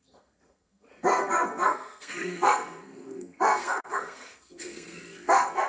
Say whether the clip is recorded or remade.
remade